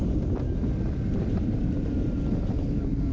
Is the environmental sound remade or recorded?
recorded